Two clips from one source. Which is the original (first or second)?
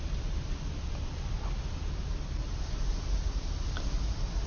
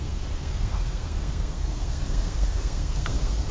first